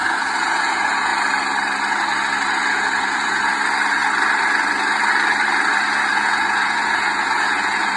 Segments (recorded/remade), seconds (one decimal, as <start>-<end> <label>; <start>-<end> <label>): 0.0-1.1 remade; 1.1-2.7 recorded; 2.7-3.5 remade; 3.5-6.1 recorded; 6.1-8.0 remade